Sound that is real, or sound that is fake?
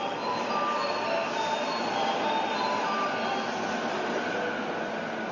real